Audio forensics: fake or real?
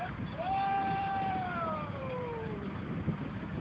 fake